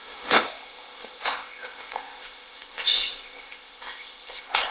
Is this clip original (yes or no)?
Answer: no